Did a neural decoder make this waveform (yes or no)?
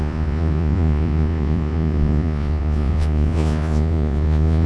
yes